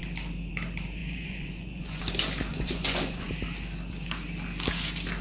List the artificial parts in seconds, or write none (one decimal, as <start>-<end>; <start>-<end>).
1.0-2.0; 2.5-3.3